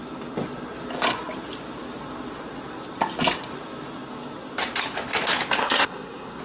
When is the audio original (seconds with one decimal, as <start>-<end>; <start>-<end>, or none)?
0.0-5.6